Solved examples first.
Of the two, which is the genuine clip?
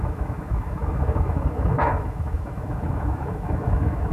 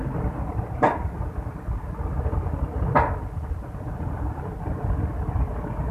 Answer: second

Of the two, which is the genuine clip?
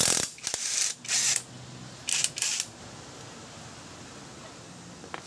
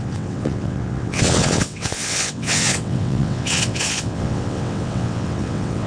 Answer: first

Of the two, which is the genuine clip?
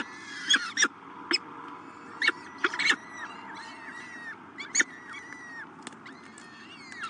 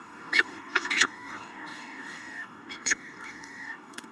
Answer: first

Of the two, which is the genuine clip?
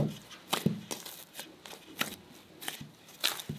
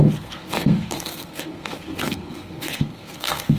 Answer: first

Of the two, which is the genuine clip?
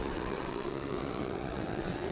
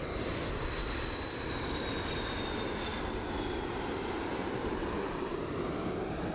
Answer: second